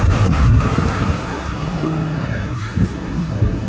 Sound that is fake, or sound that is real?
fake